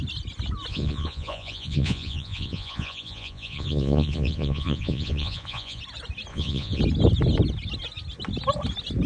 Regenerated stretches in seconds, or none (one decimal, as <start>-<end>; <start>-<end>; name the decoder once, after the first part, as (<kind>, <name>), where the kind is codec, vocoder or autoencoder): 0.7-5.8 (vocoder, Vocos); 6.3-6.8